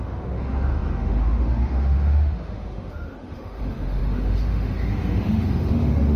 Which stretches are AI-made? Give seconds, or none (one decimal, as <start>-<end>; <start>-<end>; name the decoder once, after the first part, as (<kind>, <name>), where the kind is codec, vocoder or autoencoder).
0.0-6.2 (autoencoder, DAC-VAE)